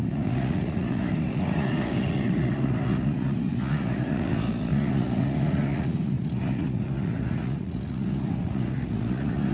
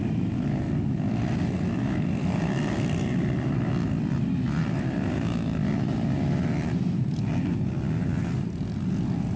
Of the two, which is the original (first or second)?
second